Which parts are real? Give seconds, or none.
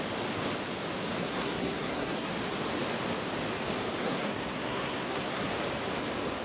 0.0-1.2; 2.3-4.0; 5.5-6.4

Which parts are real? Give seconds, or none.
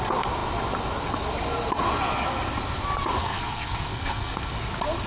0.0-3.2; 4.5-5.1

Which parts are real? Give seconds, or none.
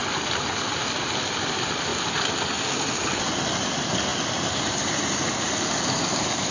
0.0-6.5